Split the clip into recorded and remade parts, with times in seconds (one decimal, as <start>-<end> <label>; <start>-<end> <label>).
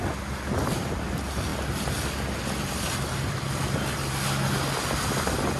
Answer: 0.0-5.6 recorded